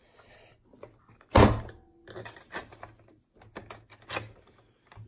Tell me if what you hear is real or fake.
real